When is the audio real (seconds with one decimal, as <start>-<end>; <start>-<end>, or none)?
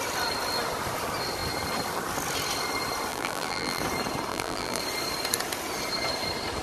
0.0-3.1; 3.8-4.3; 4.8-6.6